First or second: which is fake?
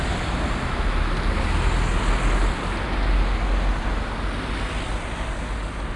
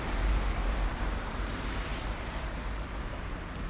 second